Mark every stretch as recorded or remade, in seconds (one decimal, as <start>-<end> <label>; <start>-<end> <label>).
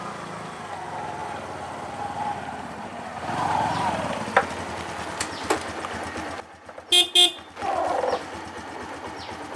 0.0-1.2 recorded; 1.2-4.2 remade; 4.2-9.6 recorded